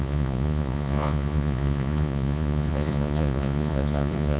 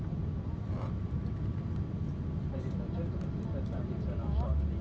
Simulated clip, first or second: first